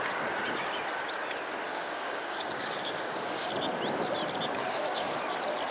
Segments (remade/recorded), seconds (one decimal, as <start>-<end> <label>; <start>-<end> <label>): 0.0-1.7 recorded; 1.7-3.5 remade; 3.5-4.6 recorded; 4.6-5.2 remade; 5.2-5.7 recorded